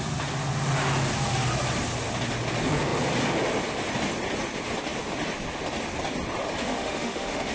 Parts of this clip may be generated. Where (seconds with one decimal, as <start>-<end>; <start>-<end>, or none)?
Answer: 6.6-7.5